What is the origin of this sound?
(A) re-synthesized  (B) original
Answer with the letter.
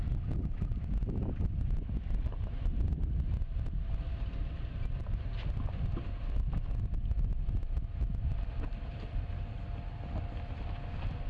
B